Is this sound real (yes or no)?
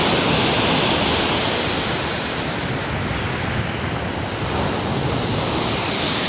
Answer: yes